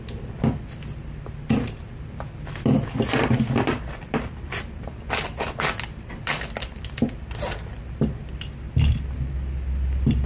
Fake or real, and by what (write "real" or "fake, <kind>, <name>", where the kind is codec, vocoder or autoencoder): fake, vocoder, BigVGAN v2